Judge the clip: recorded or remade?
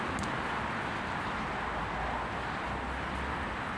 recorded